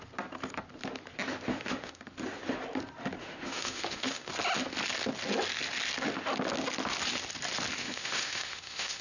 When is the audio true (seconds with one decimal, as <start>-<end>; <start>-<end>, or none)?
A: 0.0-1.5; 2.0-3.2; 4.3-7.8